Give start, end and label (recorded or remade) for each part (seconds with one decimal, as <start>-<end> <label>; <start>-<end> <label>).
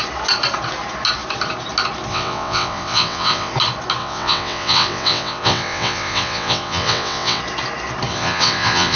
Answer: 0.0-2.1 recorded; 2.1-3.5 remade; 3.5-4.0 recorded; 4.0-7.4 remade; 7.4-8.1 recorded; 8.1-9.0 remade